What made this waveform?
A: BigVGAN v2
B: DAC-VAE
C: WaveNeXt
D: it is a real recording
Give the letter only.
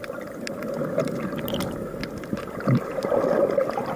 D